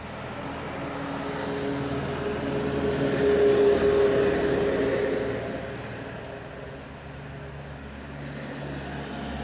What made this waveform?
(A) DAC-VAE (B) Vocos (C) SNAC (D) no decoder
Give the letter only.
D